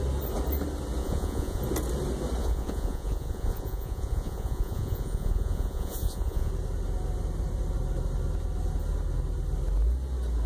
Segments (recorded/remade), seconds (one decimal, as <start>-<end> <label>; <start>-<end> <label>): 0.0-1.0 recorded; 1.0-1.6 remade; 1.6-2.4 recorded; 2.4-6.5 remade; 6.5-10.5 recorded